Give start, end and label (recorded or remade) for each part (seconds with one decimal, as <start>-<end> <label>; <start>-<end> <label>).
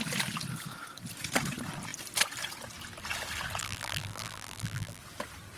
0.0-3.6 recorded; 3.6-5.0 remade; 5.0-5.6 recorded